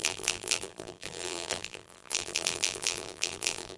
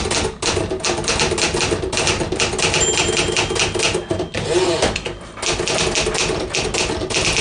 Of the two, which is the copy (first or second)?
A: first